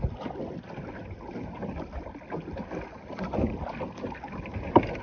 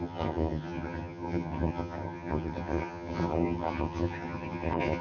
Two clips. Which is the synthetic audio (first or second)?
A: second